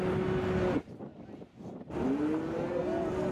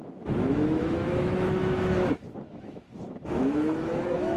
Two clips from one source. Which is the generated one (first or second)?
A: second